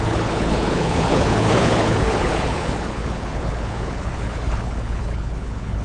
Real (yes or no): no